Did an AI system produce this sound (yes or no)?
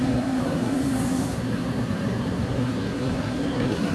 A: yes